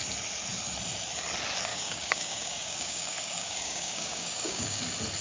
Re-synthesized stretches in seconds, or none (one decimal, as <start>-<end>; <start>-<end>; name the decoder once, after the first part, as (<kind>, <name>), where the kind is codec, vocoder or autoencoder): 1.7-4.8 (codec, DAC)